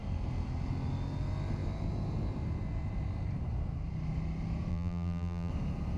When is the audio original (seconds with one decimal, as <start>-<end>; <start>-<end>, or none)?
0.0-4.7; 5.5-6.0